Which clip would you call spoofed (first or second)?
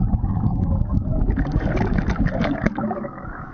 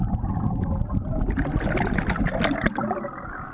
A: first